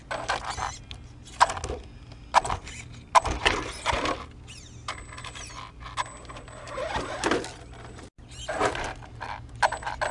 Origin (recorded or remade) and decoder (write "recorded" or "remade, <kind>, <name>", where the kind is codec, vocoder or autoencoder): recorded